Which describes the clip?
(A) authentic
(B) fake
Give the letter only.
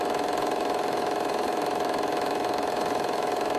B